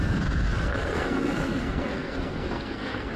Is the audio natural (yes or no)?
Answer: no